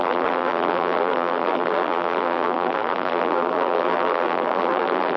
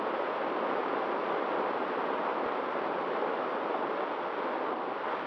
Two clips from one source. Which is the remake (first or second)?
first